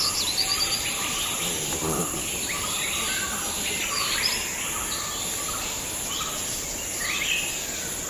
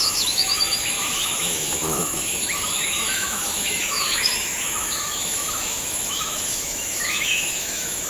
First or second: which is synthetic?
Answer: second